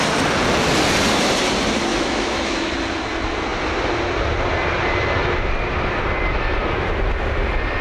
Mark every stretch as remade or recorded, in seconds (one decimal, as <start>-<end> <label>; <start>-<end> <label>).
0.0-1.9 recorded; 1.9-2.7 remade; 2.7-7.8 recorded